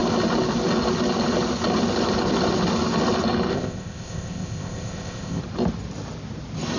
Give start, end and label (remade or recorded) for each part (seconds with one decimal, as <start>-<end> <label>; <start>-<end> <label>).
0.0-3.5 recorded; 3.5-5.4 remade; 5.4-6.8 recorded